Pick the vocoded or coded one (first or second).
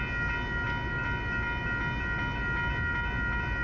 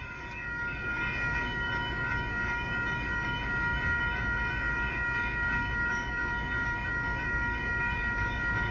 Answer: second